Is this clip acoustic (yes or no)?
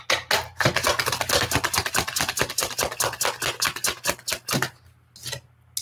yes